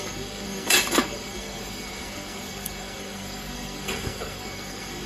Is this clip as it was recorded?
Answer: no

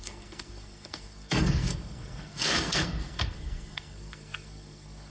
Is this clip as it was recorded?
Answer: no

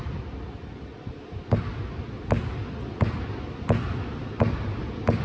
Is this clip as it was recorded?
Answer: yes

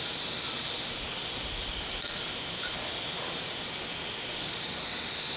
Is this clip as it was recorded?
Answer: yes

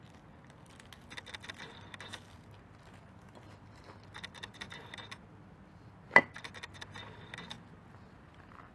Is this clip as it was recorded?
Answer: yes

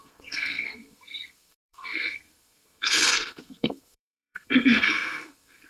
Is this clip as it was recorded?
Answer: no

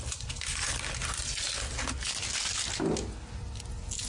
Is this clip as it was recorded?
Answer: yes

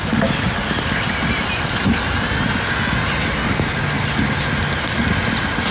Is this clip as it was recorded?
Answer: yes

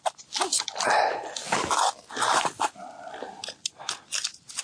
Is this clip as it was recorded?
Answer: yes